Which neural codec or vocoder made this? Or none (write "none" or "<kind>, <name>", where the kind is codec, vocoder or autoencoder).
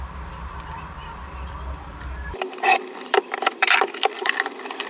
vocoder, BigVGAN v2